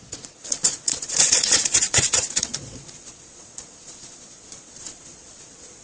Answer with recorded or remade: remade